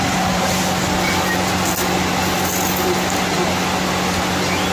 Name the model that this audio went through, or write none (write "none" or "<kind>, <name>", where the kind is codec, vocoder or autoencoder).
none